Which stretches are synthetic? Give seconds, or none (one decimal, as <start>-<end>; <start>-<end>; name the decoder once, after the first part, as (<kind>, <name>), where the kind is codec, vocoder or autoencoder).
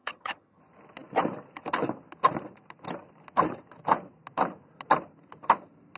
0.0-0.6 (vocoder, HiFi-GAN)